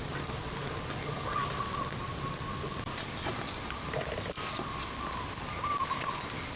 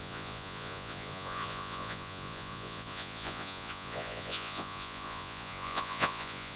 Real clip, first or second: first